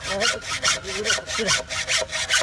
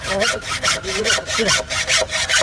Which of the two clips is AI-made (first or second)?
second